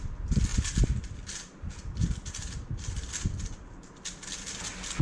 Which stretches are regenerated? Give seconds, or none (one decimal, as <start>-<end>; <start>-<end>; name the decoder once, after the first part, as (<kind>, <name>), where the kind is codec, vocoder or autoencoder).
none